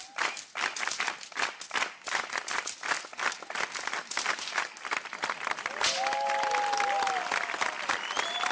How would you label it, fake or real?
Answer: real